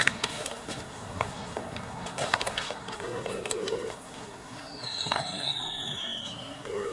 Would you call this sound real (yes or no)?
no